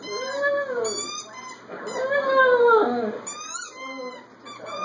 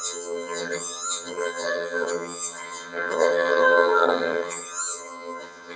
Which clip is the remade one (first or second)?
second